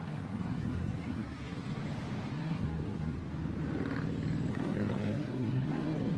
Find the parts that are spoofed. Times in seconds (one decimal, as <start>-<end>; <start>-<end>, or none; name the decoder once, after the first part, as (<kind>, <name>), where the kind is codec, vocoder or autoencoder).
0.0-1.8 (codec, SNAC); 2.3-3.2; 4.5-6.2